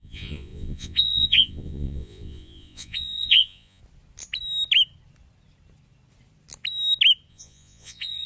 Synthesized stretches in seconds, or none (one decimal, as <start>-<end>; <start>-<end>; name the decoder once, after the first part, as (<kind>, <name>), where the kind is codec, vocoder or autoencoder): 0.0-3.8 (vocoder, Vocos); 7.3-8.3